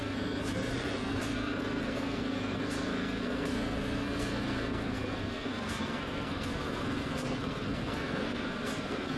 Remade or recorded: remade